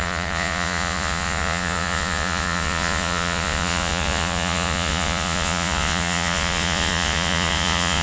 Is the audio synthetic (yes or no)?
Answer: yes